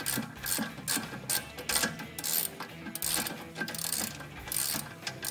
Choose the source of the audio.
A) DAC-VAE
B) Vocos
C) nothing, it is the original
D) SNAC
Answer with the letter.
C